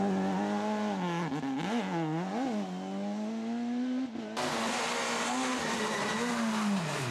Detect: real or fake real